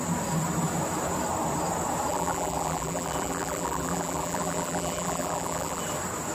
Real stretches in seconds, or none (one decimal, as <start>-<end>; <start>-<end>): 0.0-2.1; 5.8-6.3